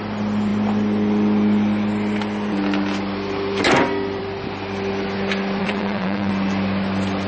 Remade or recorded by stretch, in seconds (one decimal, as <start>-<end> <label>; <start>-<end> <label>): 0.0-5.6 recorded; 5.6-6.3 remade; 6.3-7.3 recorded